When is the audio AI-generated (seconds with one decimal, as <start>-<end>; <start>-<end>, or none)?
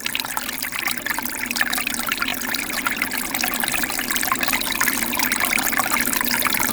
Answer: none